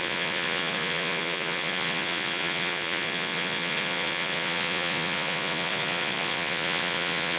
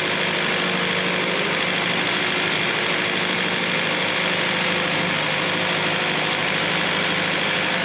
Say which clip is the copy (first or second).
first